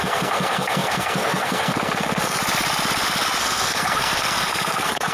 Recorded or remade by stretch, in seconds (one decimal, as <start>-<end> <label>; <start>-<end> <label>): 0.0-2.4 remade; 2.4-3.4 recorded; 3.4-5.1 remade